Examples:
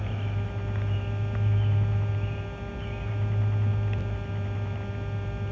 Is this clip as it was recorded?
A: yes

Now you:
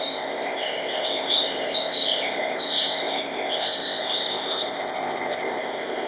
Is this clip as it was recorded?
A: no